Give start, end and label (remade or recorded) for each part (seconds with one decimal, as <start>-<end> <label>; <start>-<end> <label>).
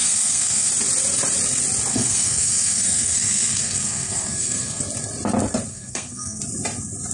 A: 0.0-0.7 remade; 0.7-1.9 recorded; 1.9-4.8 remade; 4.8-5.7 recorded; 5.7-6.4 remade; 6.4-7.1 recorded